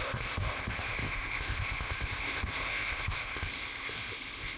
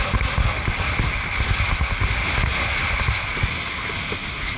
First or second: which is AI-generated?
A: first